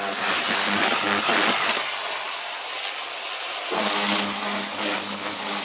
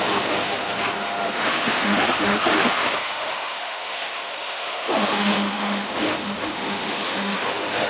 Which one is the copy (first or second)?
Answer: second